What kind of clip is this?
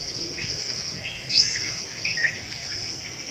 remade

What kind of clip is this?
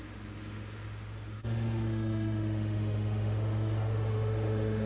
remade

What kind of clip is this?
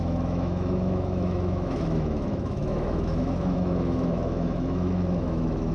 remade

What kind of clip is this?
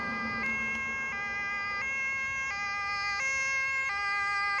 recorded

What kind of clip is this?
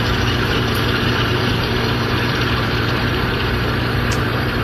remade